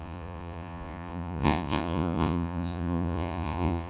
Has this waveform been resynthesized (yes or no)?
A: yes